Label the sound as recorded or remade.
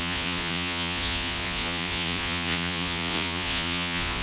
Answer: remade